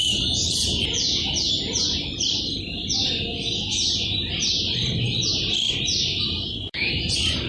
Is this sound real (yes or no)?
no